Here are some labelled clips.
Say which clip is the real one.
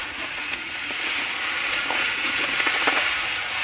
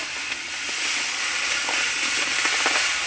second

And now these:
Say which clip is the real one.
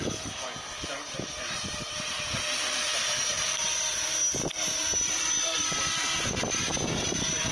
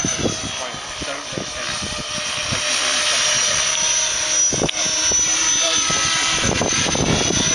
second